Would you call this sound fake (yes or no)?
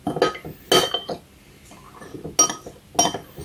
no